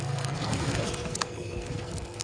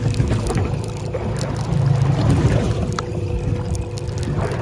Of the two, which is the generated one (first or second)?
first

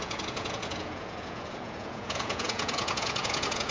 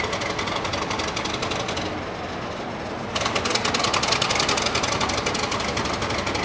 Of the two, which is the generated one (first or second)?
first